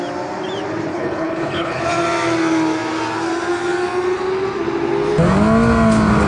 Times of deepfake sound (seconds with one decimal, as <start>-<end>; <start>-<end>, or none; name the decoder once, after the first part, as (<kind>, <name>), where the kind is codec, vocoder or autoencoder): 0.9-1.8 (codec, HILCodec)